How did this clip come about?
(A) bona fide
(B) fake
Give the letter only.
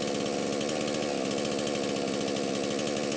A